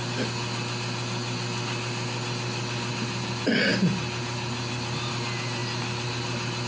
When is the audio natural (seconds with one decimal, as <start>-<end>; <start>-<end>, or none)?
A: 0.0-6.7